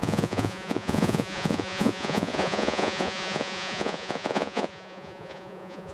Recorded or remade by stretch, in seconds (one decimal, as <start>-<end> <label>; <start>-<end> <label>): 0.0-5.9 remade